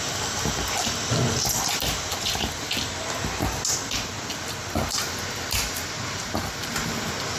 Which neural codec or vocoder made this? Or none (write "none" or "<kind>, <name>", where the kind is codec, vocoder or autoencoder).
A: none